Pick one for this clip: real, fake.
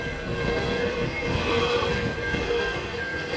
fake